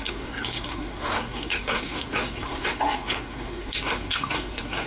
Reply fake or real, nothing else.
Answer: fake